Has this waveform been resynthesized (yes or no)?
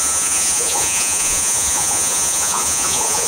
yes